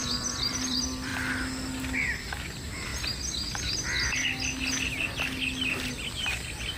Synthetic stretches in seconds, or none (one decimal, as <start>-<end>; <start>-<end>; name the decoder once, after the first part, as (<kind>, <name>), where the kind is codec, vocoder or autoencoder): 0.0-1.1 (vocoder, BigVGAN v2); 2.0-2.9; 6.1-6.8